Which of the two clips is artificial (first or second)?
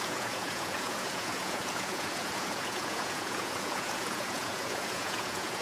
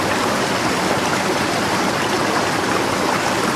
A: first